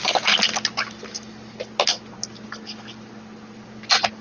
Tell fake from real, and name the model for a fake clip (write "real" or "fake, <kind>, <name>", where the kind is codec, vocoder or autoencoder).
real